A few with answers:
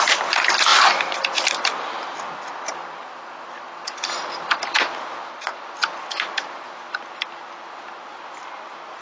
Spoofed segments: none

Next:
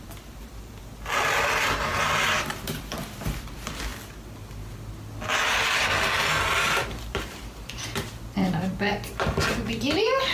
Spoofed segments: 0.0-3.9 (vocoder, BigVGAN v2); 5.4-8.9; 9.5-10.3

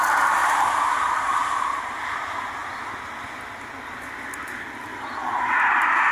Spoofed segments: 0.4-1.1 (vocoder, BigVGAN v2); 4.9-6.1

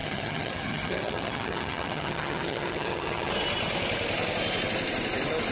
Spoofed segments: 0.0-3.3 (vocoder, HiFi-GAN)